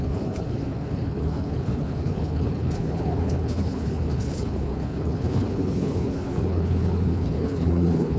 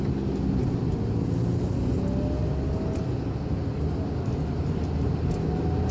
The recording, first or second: second